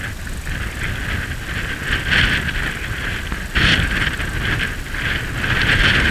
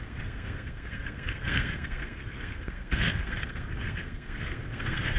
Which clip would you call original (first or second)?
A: first